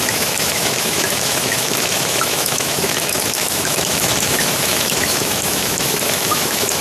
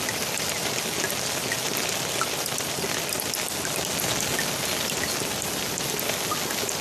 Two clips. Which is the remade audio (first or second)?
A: first